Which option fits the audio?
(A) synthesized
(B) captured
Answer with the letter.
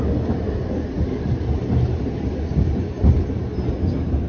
B